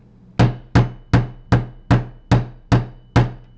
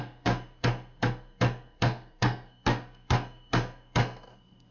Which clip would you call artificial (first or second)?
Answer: second